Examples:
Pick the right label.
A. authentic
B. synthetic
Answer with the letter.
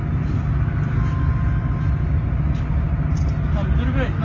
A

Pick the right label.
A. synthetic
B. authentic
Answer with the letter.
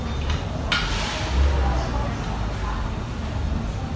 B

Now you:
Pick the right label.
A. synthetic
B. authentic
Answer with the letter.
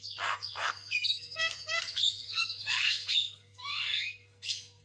A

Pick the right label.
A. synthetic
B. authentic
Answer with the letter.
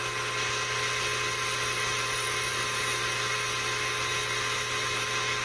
B